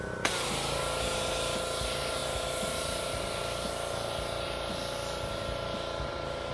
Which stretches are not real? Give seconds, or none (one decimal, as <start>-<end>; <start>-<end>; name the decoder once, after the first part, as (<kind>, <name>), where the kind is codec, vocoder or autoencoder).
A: none